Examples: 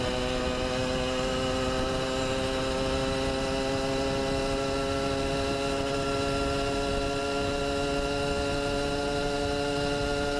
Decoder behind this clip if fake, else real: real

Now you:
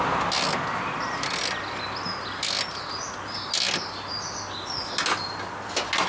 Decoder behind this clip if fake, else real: real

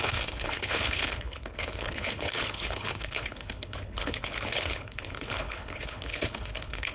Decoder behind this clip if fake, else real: fake, codec, HILCodec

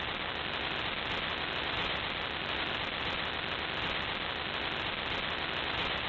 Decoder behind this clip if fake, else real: real